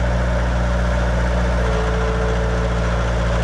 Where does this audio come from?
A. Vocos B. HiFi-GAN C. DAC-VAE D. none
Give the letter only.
D